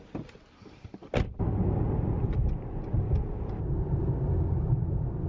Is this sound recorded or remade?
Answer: recorded